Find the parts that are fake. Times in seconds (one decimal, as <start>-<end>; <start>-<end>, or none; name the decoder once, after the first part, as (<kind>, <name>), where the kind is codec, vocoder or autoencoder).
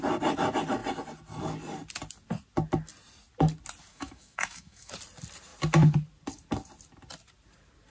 3.9-4.9 (autoencoder, DAC-VAE)